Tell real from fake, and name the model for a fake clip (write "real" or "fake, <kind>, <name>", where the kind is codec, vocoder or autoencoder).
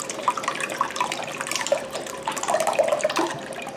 fake, vocoder, BigVGAN v2